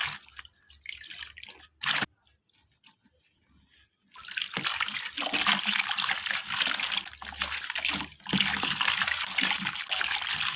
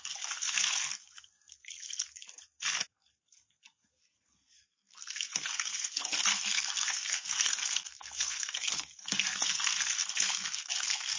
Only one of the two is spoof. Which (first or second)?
second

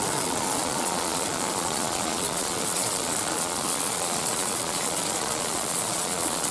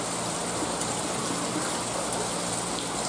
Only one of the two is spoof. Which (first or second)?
first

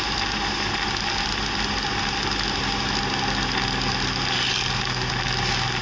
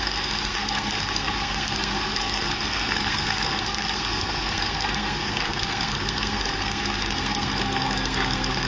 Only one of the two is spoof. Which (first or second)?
second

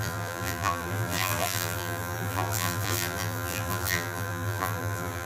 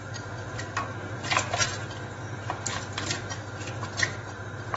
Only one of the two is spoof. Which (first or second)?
first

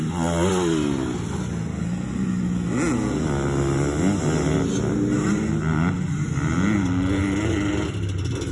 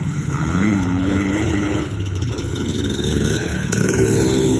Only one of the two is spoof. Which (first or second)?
second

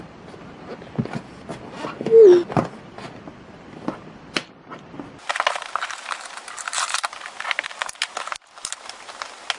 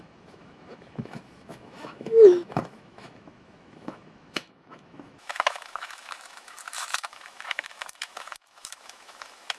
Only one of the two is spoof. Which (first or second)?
second